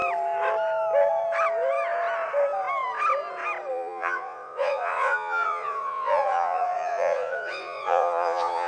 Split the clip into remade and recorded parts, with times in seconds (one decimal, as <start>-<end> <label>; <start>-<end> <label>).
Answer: 0.0-3.7 recorded; 3.7-8.7 remade